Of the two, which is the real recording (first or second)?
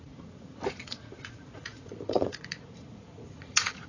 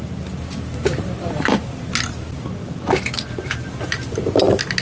second